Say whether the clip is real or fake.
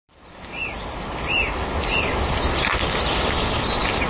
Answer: real